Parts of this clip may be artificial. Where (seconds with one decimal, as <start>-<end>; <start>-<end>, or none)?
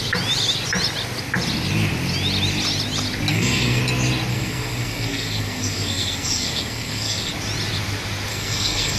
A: 3.3-3.8; 4.3-7.3; 8.3-9.0